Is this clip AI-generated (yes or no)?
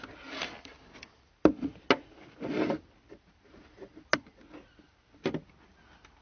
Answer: no